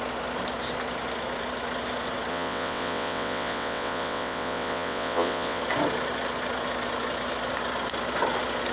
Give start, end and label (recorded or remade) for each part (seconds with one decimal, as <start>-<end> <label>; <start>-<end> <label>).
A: 0.0-2.3 recorded; 2.3-5.6 remade; 5.6-8.7 recorded